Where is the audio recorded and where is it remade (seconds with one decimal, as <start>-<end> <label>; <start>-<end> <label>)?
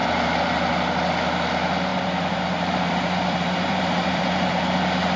0.0-0.7 remade; 0.7-1.9 recorded; 1.9-4.6 remade; 4.6-5.2 recorded